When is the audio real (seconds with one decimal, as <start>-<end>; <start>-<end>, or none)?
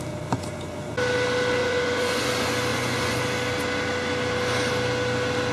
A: 0.0-1.6; 2.3-2.7; 3.2-5.5